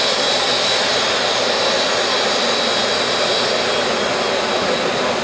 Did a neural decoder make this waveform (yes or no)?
no